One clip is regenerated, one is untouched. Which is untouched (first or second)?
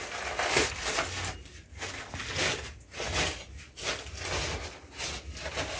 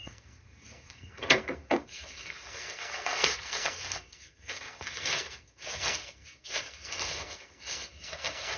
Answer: first